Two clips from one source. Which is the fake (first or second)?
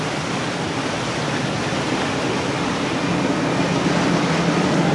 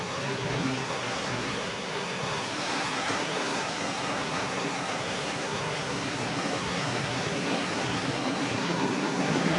second